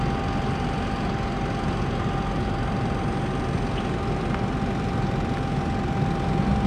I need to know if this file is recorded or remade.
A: recorded